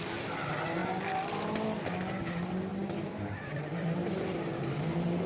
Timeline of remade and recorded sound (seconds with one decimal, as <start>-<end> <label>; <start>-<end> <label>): 0.0-2.7 recorded; 2.7-4.1 remade; 4.1-5.3 recorded